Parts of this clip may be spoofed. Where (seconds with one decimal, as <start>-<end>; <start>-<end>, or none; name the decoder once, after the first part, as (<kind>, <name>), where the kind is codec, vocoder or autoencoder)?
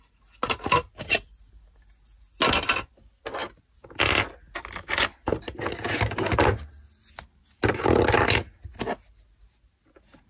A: none